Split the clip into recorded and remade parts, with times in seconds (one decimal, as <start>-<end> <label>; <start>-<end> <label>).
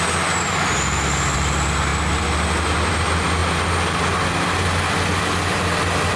0.0-6.2 recorded